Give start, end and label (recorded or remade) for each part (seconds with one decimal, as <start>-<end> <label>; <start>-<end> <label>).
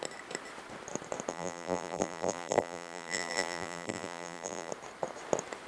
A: 0.0-1.3 recorded; 1.3-4.7 remade; 4.7-5.7 recorded